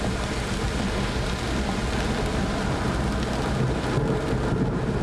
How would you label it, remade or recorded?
recorded